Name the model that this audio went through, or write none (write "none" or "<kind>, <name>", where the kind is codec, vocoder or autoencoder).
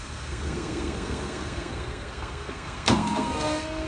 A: codec, SNAC